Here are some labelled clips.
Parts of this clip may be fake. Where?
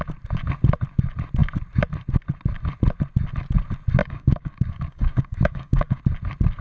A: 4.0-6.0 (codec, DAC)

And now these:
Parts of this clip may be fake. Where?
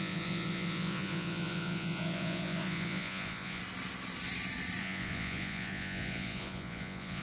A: 0.0-3.6 (vocoder, Vocos); 4.8-7.2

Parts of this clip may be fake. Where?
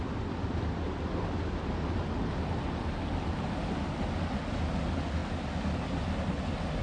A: none